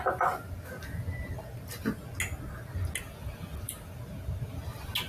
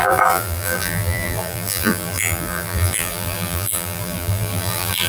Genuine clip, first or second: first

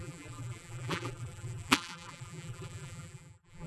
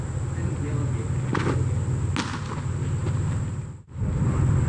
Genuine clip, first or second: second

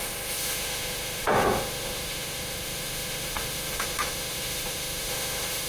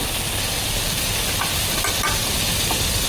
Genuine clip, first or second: second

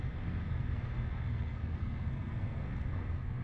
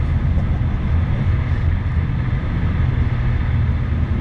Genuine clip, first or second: second